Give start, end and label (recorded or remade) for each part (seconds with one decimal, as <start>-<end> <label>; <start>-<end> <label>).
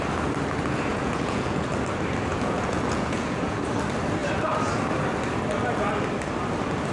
0.0-0.9 recorded; 0.9-1.7 remade; 1.7-2.3 recorded; 2.3-3.6 remade; 3.6-6.9 recorded